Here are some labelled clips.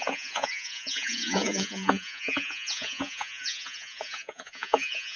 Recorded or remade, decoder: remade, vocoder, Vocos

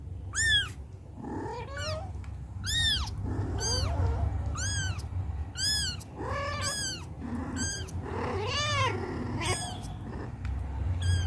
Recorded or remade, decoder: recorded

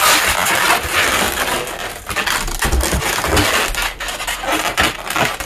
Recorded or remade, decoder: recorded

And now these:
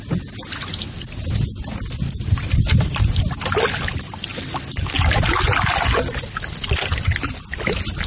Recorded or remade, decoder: recorded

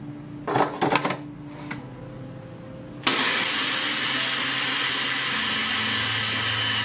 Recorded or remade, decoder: recorded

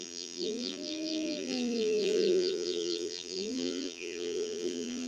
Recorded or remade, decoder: remade, vocoder, BigVGAN v2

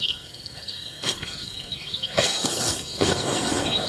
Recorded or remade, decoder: remade, codec, SNAC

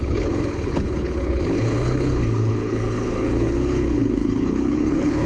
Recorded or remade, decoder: remade, codec, HILCodec